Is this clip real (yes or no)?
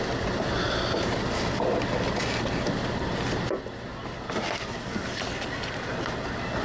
yes